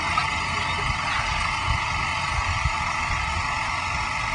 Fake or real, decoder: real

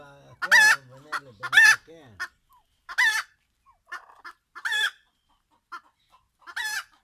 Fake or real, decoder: real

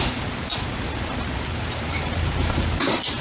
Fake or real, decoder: fake, vocoder, BigVGAN v2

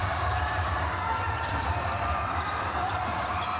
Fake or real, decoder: fake, vocoder, BigVGAN v2